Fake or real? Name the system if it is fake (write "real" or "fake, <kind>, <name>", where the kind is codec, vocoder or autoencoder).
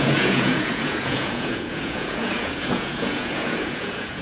fake, vocoder, Vocos